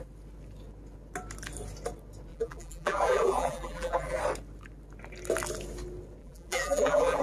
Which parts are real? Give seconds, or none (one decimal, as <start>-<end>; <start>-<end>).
0.0-2.3; 4.2-6.2